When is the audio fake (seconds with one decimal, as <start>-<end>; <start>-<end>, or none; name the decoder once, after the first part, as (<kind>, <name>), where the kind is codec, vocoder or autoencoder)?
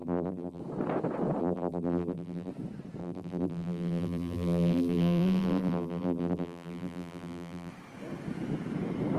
0.0-0.6 (vocoder, BigVGAN v2); 1.4-2.5; 3.0-7.7